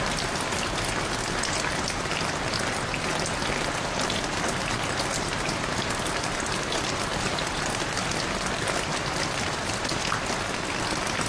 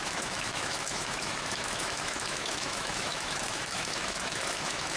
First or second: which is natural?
first